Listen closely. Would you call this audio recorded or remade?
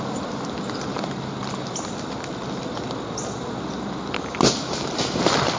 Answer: recorded